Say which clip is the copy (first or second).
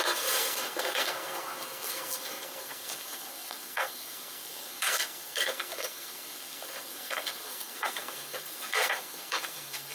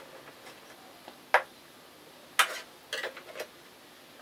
first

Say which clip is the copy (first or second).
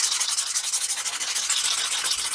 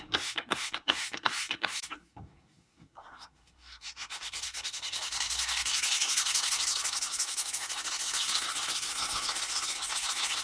second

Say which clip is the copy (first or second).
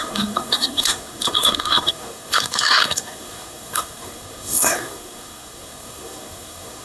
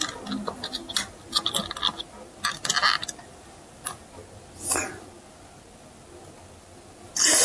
first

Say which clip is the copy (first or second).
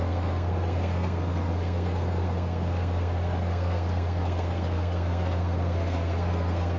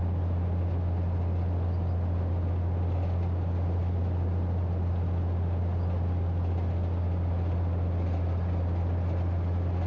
first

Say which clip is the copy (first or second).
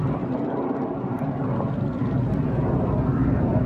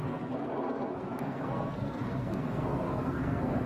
second